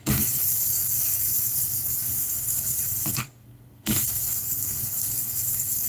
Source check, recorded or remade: remade